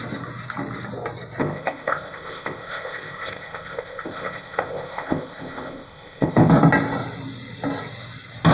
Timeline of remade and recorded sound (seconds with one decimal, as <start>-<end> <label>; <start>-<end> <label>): 0.0-1.4 recorded; 1.4-6.5 remade; 6.5-8.5 recorded